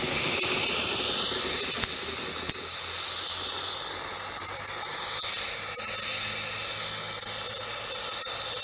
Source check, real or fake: real